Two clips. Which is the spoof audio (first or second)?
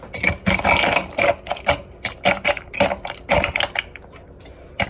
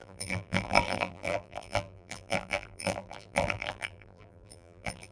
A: second